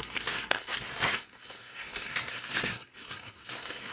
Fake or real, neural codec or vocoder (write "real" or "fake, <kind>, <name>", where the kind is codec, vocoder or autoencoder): fake, codec, SNAC